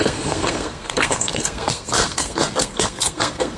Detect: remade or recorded remade